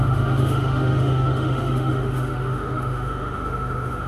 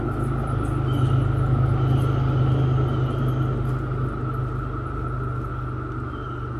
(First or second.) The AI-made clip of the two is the first